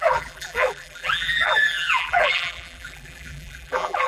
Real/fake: fake